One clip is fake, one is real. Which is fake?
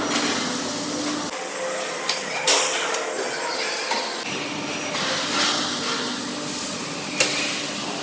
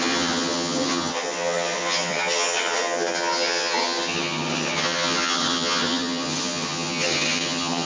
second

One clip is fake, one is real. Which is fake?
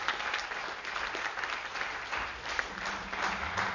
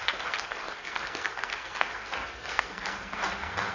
second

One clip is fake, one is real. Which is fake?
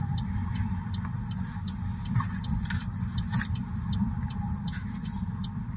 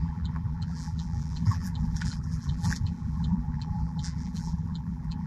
second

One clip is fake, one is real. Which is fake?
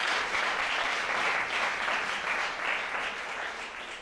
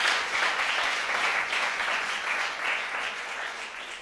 second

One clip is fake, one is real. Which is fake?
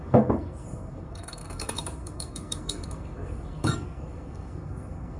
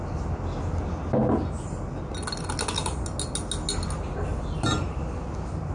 first